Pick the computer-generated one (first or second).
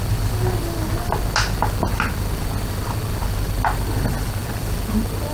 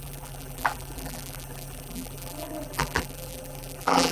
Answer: second